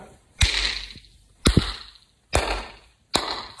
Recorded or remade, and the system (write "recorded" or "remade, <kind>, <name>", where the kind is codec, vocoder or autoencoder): recorded